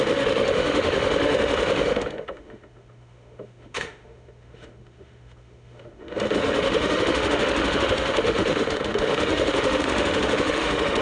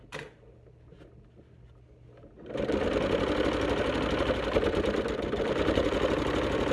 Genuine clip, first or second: second